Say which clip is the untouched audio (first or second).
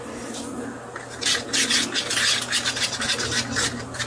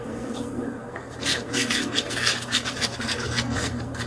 first